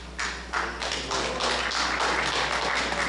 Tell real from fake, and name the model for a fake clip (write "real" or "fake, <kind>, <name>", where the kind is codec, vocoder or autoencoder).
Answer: real